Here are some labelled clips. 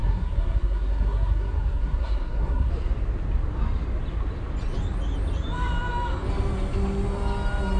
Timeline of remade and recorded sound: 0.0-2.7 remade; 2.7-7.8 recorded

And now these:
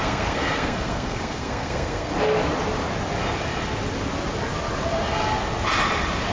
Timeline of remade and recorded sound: 0.0-2.1 remade; 2.1-6.3 recorded

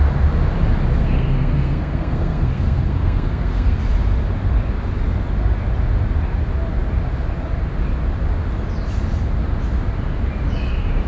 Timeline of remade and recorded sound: 0.0-1.0 recorded; 1.0-3.8 remade; 3.8-11.1 recorded

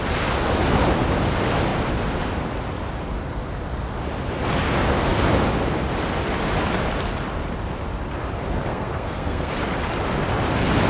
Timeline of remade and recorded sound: 0.0-8.7 recorded; 8.7-9.5 remade; 9.5-10.9 recorded

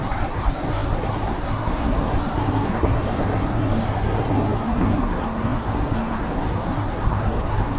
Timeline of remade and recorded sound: 0.0-7.8 remade

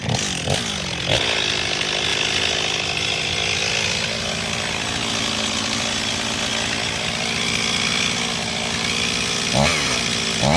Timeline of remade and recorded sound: 0.0-10.6 recorded